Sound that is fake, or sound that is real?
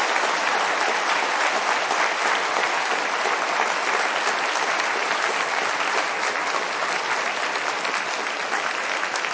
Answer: real